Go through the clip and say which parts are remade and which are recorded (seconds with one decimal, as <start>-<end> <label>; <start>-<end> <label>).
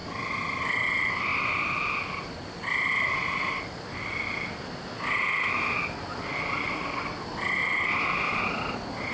0.0-9.1 recorded